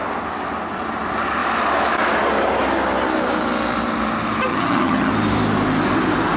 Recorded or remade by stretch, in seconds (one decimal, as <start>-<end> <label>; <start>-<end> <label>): 0.0-4.5 recorded; 4.5-5.1 remade; 5.1-6.4 recorded